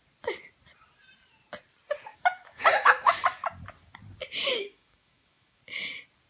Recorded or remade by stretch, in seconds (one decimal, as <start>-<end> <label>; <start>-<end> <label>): 0.0-2.1 recorded; 2.1-3.2 remade; 3.2-4.5 recorded; 4.5-5.6 remade; 5.6-6.3 recorded